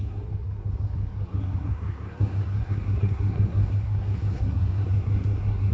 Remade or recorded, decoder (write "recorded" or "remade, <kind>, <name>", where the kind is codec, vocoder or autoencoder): remade, codec, SNAC